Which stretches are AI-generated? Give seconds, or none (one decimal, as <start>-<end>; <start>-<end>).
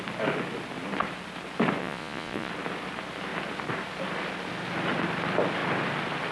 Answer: 1.8-2.5